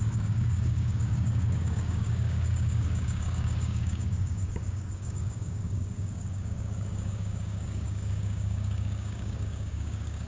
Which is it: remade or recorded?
remade